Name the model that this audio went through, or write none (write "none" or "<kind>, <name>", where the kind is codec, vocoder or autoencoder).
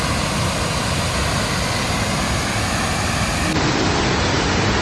none